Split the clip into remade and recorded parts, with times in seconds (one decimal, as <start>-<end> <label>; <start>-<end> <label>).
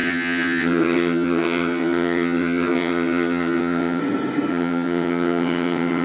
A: 0.0-4.0 remade; 4.0-4.5 recorded; 4.5-6.0 remade